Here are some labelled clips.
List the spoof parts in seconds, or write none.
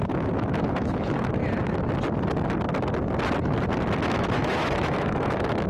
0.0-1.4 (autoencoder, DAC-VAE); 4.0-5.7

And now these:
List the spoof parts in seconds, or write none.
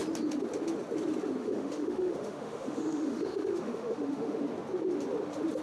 1.4-4.4 (autoencoder, DAC-VAE)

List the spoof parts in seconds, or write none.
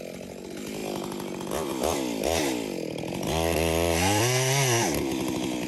none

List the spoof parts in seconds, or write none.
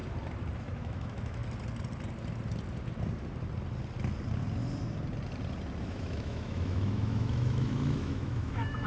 0.6-1.4 (autoencoder, DAC-VAE); 5.8-8.9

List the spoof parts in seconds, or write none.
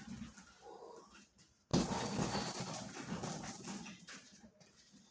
none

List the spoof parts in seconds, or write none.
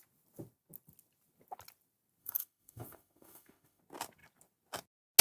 2.2-3.8 (autoencoder, DAC-VAE)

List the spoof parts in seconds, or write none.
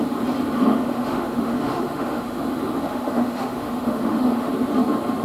0.7-2.4 (autoencoder, DAC-VAE); 2.9-4.5